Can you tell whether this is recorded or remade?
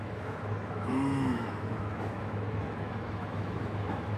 remade